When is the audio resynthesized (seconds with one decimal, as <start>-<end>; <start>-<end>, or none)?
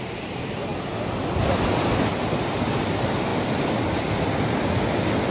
0.7-1.8